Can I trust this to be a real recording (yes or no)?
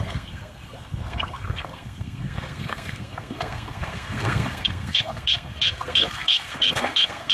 no